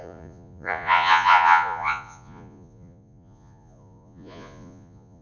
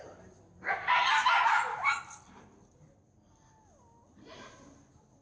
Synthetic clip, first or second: first